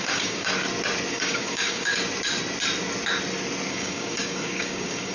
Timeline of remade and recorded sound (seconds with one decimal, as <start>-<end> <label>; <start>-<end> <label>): 0.0-0.5 remade; 0.5-1.1 recorded; 1.1-1.9 remade; 1.9-3.7 recorded; 3.7-5.1 remade